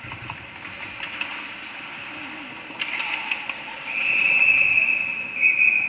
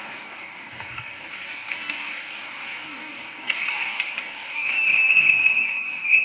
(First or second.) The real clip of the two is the first